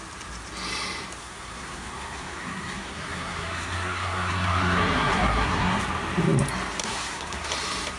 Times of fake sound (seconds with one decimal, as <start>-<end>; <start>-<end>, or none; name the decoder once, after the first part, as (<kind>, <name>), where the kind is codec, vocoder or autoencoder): 1.2-5.8 (codec, SNAC); 6.8-7.5